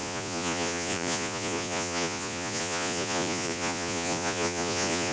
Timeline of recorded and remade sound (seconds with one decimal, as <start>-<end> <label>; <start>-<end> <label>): 0.0-5.1 remade